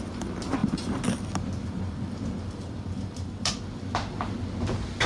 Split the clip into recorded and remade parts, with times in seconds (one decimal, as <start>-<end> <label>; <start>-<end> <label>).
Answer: 0.0-0.6 recorded; 0.6-3.5 remade; 3.5-5.1 recorded